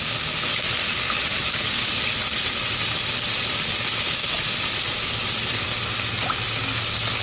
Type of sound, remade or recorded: recorded